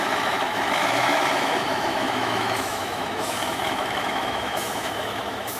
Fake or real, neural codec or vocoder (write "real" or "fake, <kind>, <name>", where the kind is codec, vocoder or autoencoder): fake, autoencoder, DAC-VAE